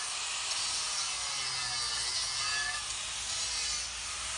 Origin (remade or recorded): recorded